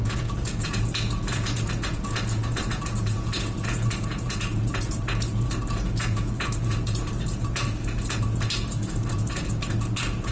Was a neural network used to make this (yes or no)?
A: yes